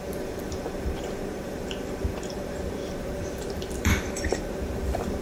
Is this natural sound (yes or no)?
no